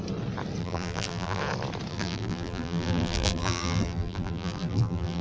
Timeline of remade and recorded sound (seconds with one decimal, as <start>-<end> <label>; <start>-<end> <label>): 0.0-0.6 recorded; 0.6-1.4 remade; 1.4-1.9 recorded; 1.9-5.2 remade